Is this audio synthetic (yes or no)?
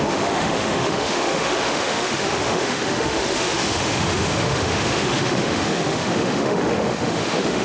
yes